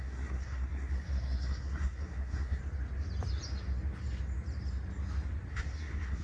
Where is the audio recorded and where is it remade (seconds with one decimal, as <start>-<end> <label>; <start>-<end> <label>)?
0.0-2.6 remade; 2.6-5.5 recorded; 5.5-6.2 remade